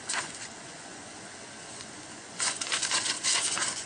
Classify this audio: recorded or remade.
remade